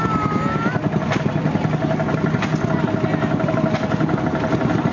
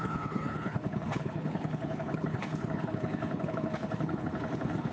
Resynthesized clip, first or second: second